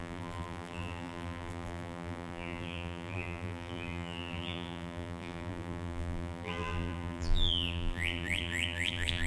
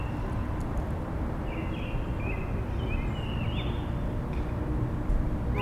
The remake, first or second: first